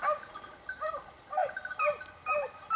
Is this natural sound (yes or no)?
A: yes